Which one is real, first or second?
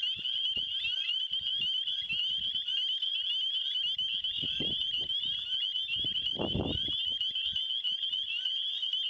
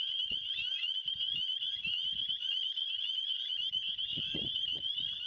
first